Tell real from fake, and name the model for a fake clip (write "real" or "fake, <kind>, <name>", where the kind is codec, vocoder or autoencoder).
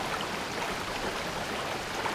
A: real